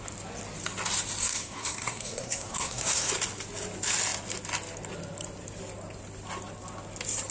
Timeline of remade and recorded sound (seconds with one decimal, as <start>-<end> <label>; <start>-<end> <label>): 0.0-1.2 recorded; 1.2-3.1 remade; 3.1-7.3 recorded